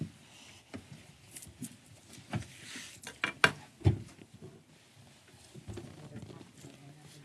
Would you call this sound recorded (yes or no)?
yes